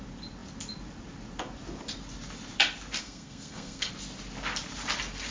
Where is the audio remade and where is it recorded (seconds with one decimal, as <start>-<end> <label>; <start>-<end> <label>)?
0.0-3.0 recorded; 3.0-3.9 remade; 3.9-5.3 recorded

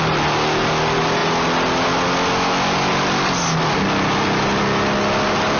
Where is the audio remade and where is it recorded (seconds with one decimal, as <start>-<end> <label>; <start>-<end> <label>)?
0.0-5.6 recorded

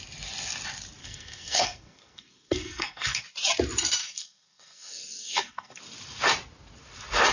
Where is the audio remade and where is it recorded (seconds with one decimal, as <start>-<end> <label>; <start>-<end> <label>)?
0.0-1.0 recorded; 1.0-3.2 remade; 3.2-4.0 recorded; 4.0-5.8 remade; 5.8-7.3 recorded

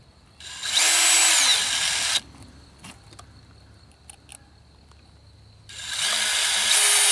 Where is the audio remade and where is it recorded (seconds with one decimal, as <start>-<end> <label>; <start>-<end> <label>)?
0.0-7.1 recorded

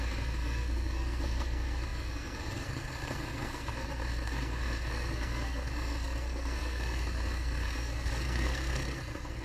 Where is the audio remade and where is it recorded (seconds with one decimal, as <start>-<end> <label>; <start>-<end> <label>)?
0.0-9.4 remade

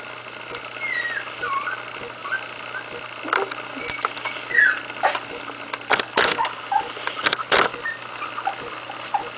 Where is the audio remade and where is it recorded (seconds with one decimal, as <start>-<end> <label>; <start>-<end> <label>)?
0.0-9.4 recorded

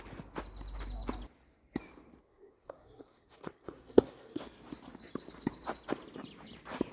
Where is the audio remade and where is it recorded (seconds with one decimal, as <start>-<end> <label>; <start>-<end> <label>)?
0.0-2.2 recorded; 2.2-4.4 remade; 4.4-6.9 recorded